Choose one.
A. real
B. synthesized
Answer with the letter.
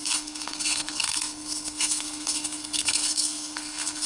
B